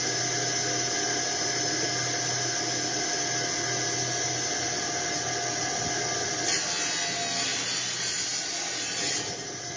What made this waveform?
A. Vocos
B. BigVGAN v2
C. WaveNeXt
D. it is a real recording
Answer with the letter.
D